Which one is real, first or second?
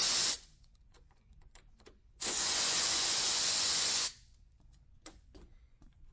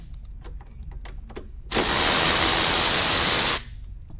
second